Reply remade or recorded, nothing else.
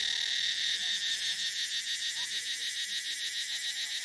recorded